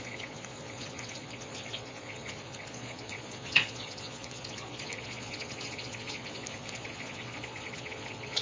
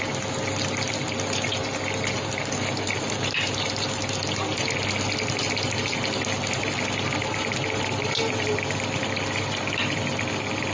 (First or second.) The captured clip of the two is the second